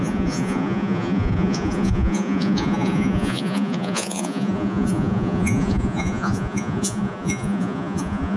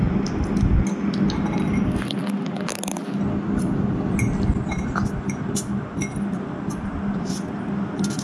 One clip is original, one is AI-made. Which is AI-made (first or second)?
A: first